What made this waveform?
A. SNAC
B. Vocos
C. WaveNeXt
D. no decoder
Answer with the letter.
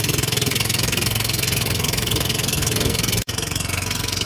A